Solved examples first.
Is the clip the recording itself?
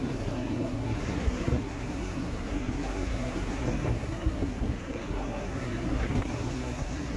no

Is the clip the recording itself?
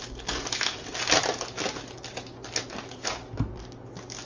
yes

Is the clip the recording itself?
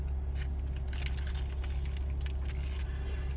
yes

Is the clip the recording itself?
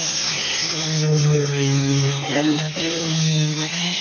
no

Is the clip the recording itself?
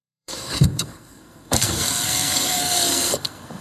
no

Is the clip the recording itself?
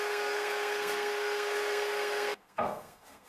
no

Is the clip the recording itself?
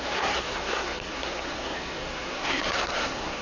no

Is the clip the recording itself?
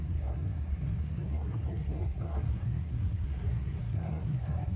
no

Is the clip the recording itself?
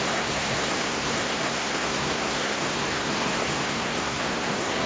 no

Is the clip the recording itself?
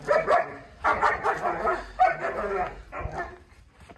yes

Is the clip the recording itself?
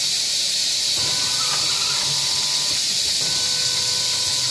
yes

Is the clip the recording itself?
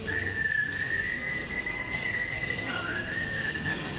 no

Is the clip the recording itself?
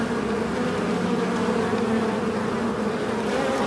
yes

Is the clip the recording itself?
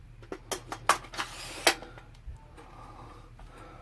yes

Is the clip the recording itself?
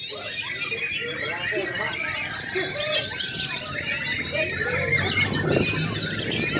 yes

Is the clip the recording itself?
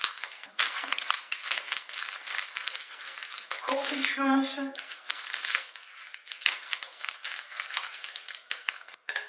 no